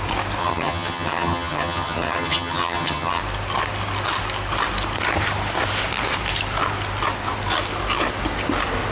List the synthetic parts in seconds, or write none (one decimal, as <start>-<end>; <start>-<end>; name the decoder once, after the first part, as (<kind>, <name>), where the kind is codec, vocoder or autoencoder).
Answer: 0.4-3.2 (vocoder, HiFi-GAN)